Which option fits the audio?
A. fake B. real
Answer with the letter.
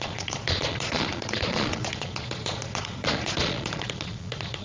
A